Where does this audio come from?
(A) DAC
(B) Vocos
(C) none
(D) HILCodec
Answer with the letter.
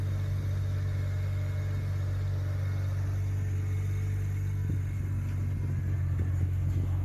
C